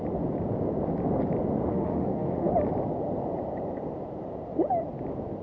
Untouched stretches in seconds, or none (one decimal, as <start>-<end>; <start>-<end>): 0.0-1.7; 2.5-5.4

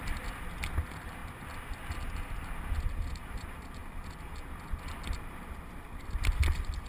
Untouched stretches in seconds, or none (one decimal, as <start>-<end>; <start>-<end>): 0.0-6.9

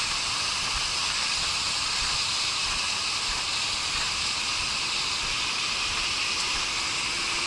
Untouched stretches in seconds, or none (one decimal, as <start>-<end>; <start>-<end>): 0.0-7.5

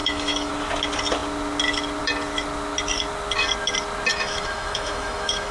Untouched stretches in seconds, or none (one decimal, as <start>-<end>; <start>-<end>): 0.5-4.1

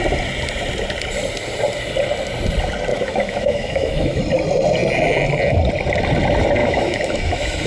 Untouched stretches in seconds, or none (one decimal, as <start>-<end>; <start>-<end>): 0.0-2.9; 4.2-6.6

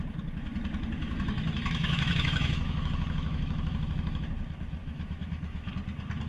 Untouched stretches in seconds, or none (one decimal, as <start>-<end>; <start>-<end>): 0.0-1.0; 4.2-4.8; 5.7-6.3

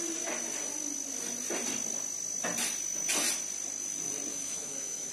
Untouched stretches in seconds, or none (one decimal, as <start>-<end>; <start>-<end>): 0.0-4.3